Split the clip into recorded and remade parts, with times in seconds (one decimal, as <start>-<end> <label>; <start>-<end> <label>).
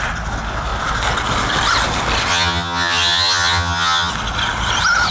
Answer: 0.0-2.3 recorded; 2.3-4.1 remade; 4.1-5.1 recorded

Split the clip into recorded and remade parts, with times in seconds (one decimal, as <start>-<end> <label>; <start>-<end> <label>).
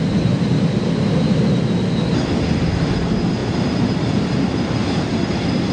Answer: 0.0-5.7 recorded